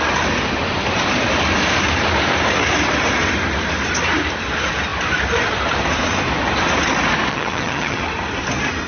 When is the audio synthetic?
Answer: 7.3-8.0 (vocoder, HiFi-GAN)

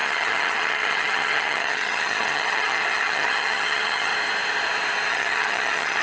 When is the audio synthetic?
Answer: 0.0-4.1 (vocoder, HiFi-GAN); 5.1-6.0